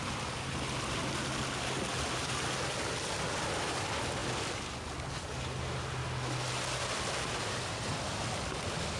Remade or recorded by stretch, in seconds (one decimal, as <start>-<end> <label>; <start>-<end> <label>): 0.0-9.0 recorded